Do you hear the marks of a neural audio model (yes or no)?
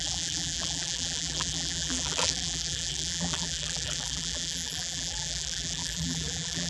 yes